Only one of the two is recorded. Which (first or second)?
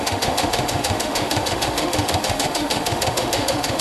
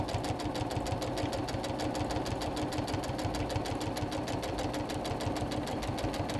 second